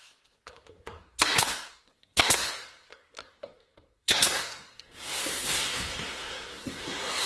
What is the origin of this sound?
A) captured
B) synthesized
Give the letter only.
B